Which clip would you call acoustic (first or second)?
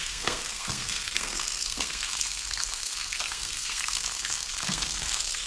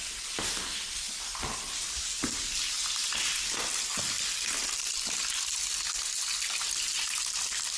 second